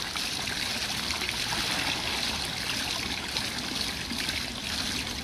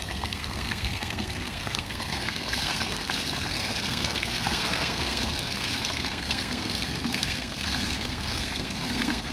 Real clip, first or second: first